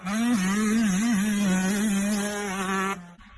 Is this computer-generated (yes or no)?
no